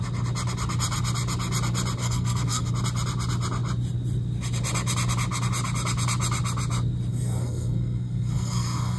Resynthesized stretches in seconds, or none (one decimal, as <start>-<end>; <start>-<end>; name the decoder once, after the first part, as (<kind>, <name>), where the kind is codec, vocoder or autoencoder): 2.0-2.7 (codec, SNAC); 7.1-9.0